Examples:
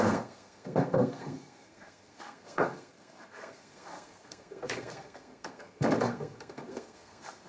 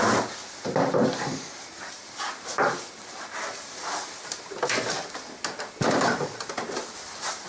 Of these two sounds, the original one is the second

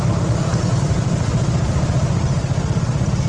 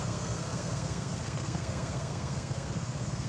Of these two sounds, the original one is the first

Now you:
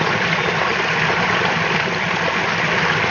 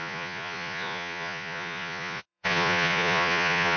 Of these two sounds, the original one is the first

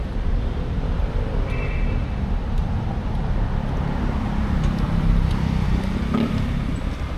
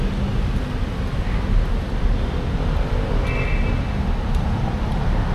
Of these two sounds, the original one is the second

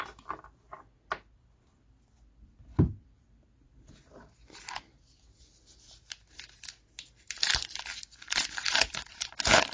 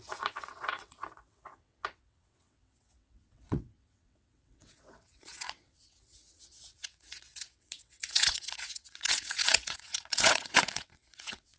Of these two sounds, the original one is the first